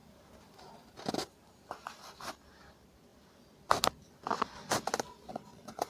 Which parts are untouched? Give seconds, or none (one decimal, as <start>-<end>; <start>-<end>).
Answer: 1.0-5.9